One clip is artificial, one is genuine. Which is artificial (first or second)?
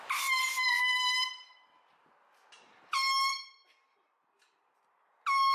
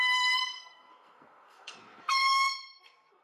second